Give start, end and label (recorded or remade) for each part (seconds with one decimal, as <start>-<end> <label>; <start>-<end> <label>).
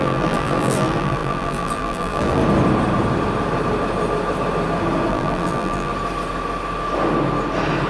0.0-2.4 remade; 2.4-5.1 recorded; 5.1-5.9 remade; 5.9-7.9 recorded